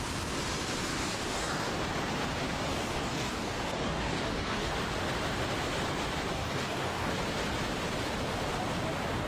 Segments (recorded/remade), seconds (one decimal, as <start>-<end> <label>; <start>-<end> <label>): 0.0-0.9 recorded; 0.9-1.7 remade; 1.7-2.7 recorded; 2.7-4.7 remade; 4.7-6.3 recorded; 6.3-7.1 remade; 7.1-9.3 recorded